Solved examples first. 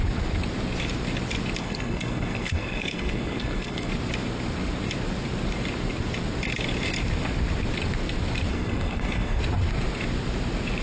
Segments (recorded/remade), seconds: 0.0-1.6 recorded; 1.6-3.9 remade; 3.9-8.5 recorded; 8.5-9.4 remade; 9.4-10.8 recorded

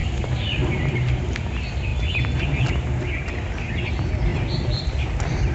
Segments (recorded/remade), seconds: 0.0-1.1 remade; 1.1-4.3 recorded; 4.3-5.5 remade

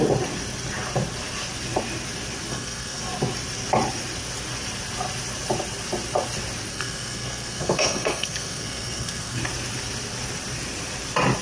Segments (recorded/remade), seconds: 0.0-2.5 recorded; 2.5-3.0 remade; 3.0-6.7 recorded; 6.7-9.4 remade; 9.4-11.4 recorded

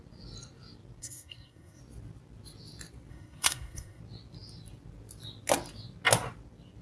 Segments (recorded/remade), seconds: 0.0-1.0 recorded; 1.0-1.8 remade; 1.8-3.1 recorded; 3.1-4.0 remade; 4.0-6.8 recorded

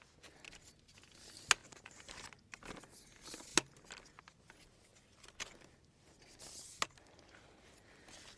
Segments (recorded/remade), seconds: 0.0-8.4 recorded

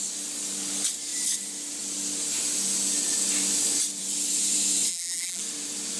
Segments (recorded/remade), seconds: 0.0-4.9 recorded; 4.9-5.4 remade; 5.4-6.0 recorded